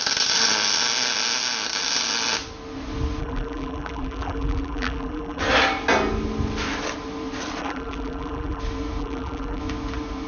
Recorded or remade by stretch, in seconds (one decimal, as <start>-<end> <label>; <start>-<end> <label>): 0.0-3.2 recorded; 3.2-5.4 remade; 5.4-7.6 recorded; 7.6-8.6 remade; 8.6-9.0 recorded; 9.0-9.6 remade; 9.6-10.3 recorded

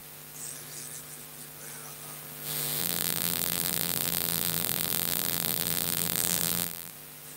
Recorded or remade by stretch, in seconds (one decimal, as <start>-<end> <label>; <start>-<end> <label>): 0.0-2.8 recorded; 2.8-6.9 remade; 6.9-7.4 recorded

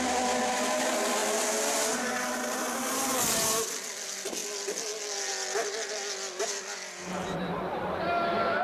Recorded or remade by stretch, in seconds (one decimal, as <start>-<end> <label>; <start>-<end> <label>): 0.0-8.6 recorded

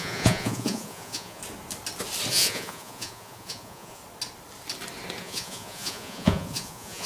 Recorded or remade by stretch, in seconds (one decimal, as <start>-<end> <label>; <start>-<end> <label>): 0.0-1.4 remade; 1.4-2.3 recorded; 2.3-4.0 remade; 4.0-5.2 recorded; 5.2-7.1 remade

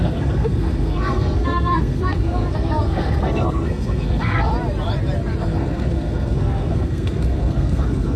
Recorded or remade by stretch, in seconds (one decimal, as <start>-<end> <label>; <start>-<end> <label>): 0.0-4.5 remade; 4.5-5.4 recorded; 5.4-8.2 remade

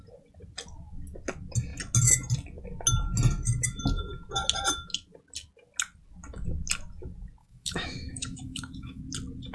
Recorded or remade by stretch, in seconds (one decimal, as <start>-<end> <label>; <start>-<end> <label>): 0.0-7.4 recorded; 7.4-9.0 remade; 9.0-9.5 recorded

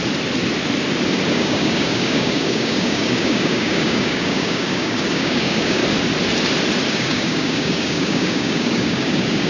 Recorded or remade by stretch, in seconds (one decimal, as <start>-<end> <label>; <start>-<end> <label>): 0.0-1.3 recorded; 1.3-5.8 remade; 5.8-6.9 recorded; 6.9-9.5 remade

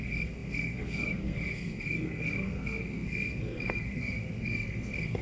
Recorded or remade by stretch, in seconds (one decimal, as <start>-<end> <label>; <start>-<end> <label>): 0.0-5.2 remade